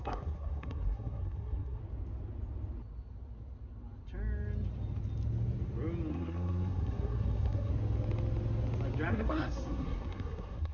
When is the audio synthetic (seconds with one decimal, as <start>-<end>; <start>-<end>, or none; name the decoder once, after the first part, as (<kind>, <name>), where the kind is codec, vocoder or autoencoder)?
0.0-1.8 (codec, SNAC); 6.1-7.7; 9.1-10.7